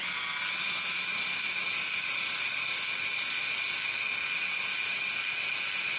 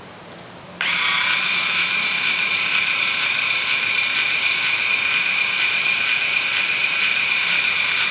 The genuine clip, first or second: first